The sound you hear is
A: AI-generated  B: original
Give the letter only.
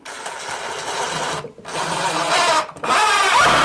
B